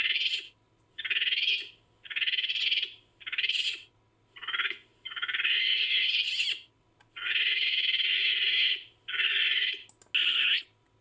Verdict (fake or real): real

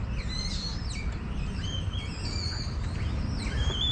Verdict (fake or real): real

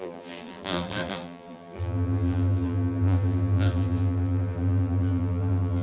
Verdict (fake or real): fake